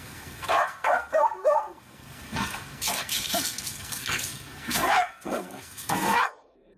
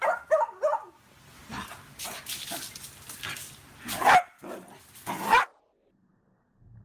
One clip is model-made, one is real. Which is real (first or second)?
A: second